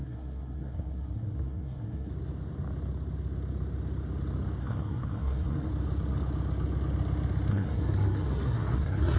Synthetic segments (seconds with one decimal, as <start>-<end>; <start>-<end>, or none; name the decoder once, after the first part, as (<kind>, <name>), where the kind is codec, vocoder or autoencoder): 0.0-2.1 (codec, SNAC); 4.6-5.7; 7.5-9.2